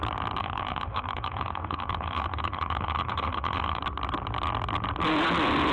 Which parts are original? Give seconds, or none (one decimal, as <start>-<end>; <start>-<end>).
0.0-0.4; 3.8-5.7